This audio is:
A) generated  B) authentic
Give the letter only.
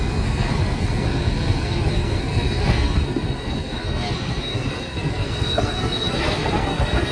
A